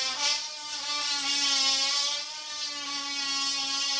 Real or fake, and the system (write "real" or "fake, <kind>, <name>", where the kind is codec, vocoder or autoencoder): real